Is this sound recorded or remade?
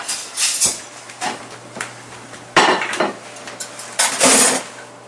recorded